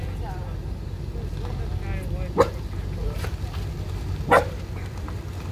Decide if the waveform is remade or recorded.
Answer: recorded